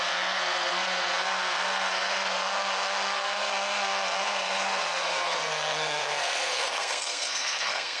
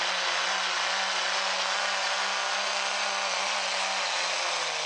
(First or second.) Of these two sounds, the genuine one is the second